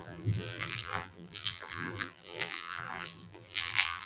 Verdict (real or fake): fake